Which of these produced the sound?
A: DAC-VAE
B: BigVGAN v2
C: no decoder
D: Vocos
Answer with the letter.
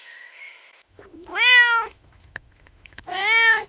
A